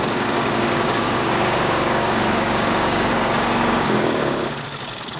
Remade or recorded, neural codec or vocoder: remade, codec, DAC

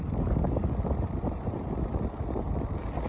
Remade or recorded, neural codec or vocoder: recorded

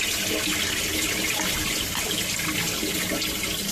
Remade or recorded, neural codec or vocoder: recorded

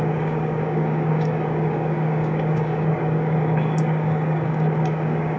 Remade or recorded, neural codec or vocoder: remade, codec, DAC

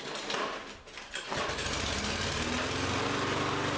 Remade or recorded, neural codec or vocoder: recorded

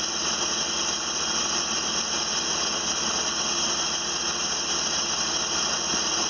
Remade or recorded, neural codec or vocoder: recorded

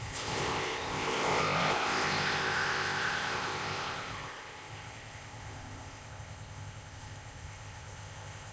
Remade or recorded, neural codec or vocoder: remade, codec, ZipCodec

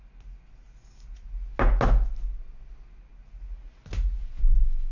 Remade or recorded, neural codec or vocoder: recorded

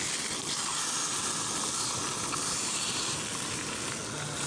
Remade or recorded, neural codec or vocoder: recorded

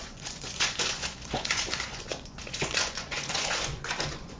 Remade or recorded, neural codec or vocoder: remade, vocoder, Vocos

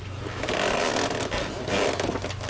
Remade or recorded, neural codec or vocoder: recorded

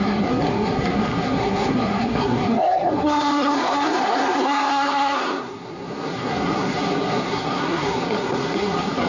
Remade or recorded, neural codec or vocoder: remade, codec, SNAC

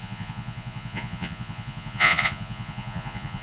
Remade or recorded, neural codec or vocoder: remade, vocoder, Vocos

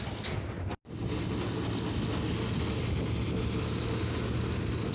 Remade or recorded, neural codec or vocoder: recorded